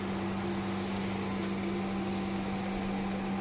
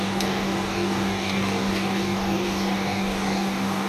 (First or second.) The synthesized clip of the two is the second